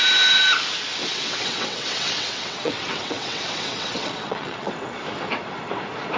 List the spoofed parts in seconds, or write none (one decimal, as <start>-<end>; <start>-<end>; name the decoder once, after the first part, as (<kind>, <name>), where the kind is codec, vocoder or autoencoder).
1.0-4.7 (vocoder, WaveNeXt)